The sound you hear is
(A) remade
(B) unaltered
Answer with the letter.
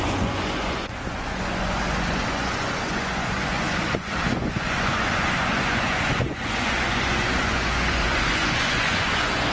A